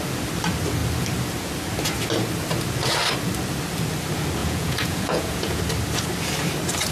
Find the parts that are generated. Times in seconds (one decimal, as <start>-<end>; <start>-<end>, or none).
4.4-5.6